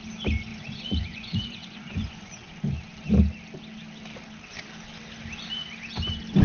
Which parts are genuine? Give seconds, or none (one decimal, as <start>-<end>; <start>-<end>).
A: 0.0-0.5; 2.5-6.4